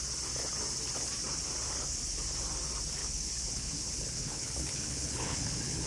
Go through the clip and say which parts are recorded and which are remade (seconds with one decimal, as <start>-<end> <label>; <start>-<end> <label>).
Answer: 0.0-3.0 recorded; 3.0-5.9 remade

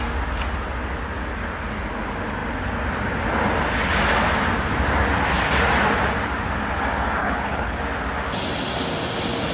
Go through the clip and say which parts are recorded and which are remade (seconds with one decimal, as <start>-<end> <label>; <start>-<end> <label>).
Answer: 0.0-7.2 recorded; 7.2-7.8 remade; 7.8-9.5 recorded

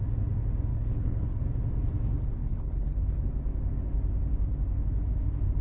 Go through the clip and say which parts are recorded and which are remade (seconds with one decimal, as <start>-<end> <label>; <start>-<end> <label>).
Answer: 0.0-0.7 recorded; 0.7-1.4 remade; 1.4-2.4 recorded; 2.4-3.2 remade; 3.2-5.6 recorded

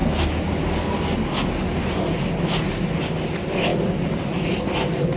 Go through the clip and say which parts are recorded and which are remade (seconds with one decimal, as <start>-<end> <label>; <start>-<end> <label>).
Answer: 0.0-5.2 recorded

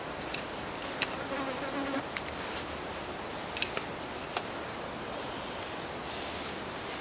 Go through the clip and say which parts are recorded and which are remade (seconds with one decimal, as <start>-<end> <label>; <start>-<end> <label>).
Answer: 0.0-7.0 recorded

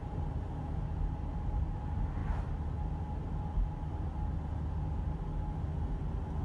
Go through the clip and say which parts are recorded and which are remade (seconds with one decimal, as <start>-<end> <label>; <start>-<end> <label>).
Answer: 0.0-6.4 recorded